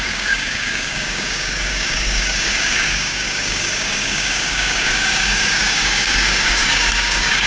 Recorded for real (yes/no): no